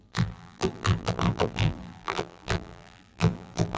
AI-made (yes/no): yes